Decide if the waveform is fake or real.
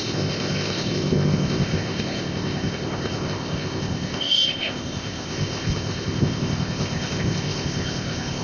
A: fake